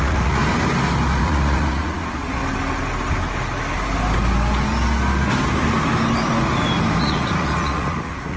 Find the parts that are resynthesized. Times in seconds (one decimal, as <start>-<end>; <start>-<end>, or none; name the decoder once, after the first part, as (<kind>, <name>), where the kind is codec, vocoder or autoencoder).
0.0-0.4 (vocoder, Vocos); 1.2-2.4; 7.0-8.4